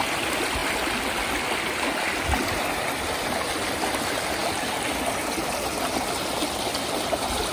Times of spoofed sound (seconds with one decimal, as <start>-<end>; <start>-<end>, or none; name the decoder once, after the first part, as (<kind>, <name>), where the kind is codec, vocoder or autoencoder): none